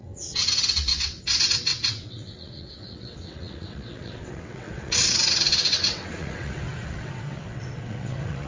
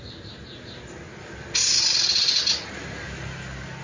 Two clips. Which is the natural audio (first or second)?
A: second